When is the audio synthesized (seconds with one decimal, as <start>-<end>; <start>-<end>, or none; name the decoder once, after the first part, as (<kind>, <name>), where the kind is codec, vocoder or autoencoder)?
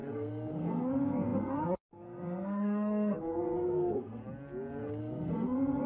0.0-4.2 (codec, SNAC); 5.0-5.9